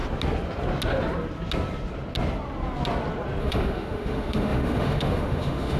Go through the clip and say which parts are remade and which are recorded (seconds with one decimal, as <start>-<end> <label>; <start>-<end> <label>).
0.0-3.4 recorded; 3.4-5.8 remade